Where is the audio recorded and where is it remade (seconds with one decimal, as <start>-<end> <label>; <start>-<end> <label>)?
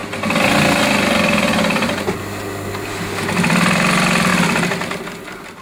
0.0-5.6 recorded